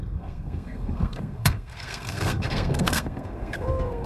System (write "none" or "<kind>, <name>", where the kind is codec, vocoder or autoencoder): codec, SNAC